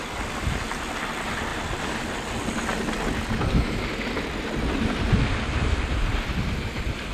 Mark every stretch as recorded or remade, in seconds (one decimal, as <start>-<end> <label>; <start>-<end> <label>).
0.0-7.1 recorded